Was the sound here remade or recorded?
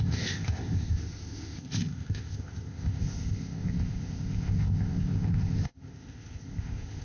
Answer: remade